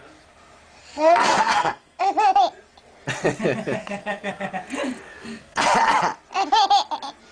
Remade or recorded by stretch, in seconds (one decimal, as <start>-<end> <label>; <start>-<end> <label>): 0.0-0.8 recorded; 0.8-2.0 remade; 2.0-3.8 recorded; 3.8-4.5 remade; 4.5-5.1 recorded; 5.1-5.6 remade; 5.6-7.3 recorded